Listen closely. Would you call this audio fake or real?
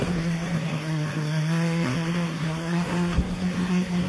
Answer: fake